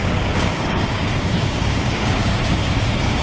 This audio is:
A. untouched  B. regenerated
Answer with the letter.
B